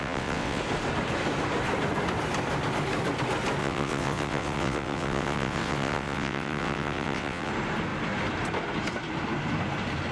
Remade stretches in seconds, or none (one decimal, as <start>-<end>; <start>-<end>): 0.0-0.6; 3.6-7.5